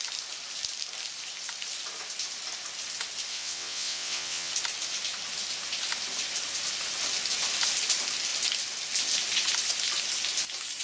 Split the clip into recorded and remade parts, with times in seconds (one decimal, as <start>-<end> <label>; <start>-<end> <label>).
0.0-3.3 recorded; 3.3-4.5 remade; 4.5-10.8 recorded